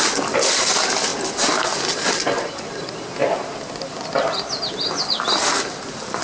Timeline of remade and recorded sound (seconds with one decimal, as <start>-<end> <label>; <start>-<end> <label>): 0.0-1.1 recorded; 1.1-1.8 remade; 1.8-6.2 recorded